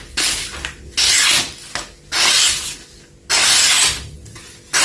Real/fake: real